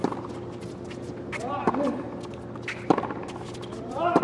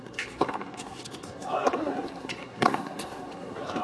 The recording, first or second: first